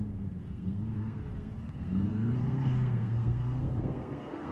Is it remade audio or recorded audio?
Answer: remade